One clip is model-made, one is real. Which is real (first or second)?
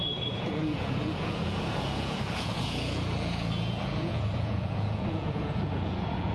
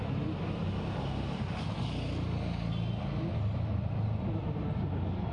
second